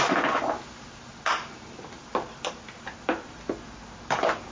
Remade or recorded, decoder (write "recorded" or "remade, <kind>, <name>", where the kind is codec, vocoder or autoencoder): recorded